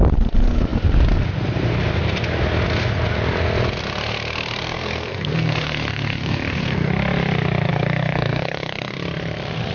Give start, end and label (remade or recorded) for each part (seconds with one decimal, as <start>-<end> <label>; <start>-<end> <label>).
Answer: 0.0-4.6 recorded; 4.6-6.9 remade; 6.9-7.7 recorded; 7.7-8.9 remade; 8.9-9.7 recorded